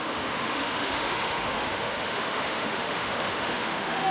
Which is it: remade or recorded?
remade